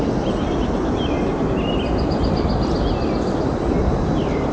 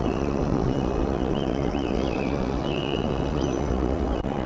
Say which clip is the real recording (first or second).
first